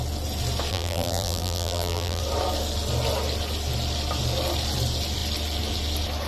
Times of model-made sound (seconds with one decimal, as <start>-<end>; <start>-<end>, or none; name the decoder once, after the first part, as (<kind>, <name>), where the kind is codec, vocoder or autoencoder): 0.7-2.2 (vocoder, BigVGAN v2)